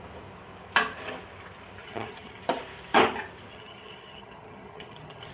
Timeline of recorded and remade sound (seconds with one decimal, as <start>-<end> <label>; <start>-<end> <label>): 0.0-1.8 recorded; 1.8-2.4 remade; 2.4-3.5 recorded; 3.5-5.3 remade